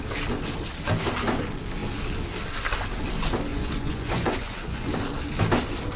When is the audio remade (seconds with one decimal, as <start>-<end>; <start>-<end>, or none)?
3.5-4.9